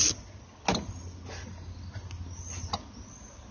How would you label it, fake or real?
real